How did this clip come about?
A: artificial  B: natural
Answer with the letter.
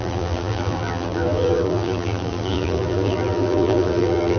A